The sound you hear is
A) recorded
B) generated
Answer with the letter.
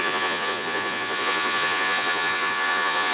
B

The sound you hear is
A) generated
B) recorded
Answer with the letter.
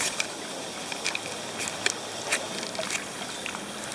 B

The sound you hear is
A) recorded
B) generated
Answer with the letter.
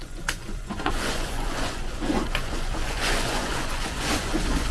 B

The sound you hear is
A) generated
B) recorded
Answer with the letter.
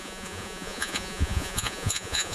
A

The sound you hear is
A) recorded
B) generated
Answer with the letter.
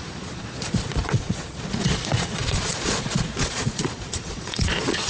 B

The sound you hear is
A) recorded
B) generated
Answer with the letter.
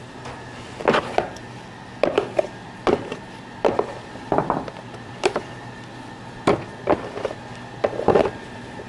A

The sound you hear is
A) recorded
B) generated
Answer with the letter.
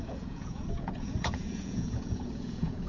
B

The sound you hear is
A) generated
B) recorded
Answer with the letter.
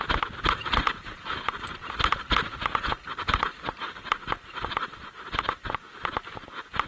B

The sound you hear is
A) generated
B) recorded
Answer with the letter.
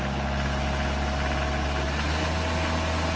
B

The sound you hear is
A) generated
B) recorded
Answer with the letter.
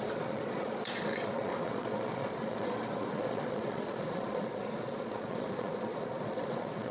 A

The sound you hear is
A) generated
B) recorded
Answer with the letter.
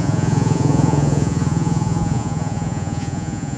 A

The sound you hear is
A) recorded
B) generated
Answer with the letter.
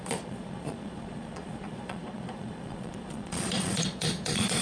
B